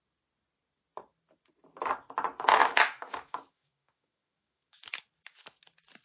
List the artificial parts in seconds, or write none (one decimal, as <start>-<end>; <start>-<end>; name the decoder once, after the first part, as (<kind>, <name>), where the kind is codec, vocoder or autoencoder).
2.6-5.0 (autoencoder, DAC-VAE)